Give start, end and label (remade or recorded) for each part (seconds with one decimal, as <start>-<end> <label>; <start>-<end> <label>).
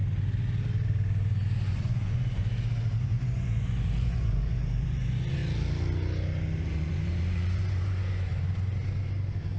0.0-1.7 recorded; 1.7-2.4 remade; 2.4-3.0 recorded; 3.0-5.4 remade; 5.4-6.7 recorded; 6.7-8.3 remade; 8.3-9.6 recorded